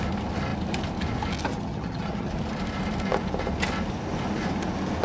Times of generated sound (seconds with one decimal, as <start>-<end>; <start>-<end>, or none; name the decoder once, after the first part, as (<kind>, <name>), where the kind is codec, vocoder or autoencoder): 1.5-2.3 (vocoder, HiFi-GAN)